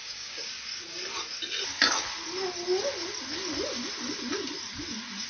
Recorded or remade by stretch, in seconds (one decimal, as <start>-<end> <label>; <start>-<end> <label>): 0.0-0.5 remade; 0.5-5.3 recorded